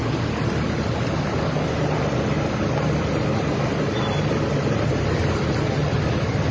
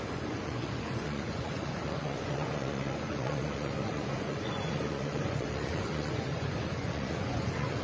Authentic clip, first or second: first